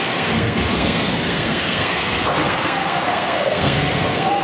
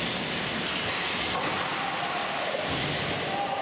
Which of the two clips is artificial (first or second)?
first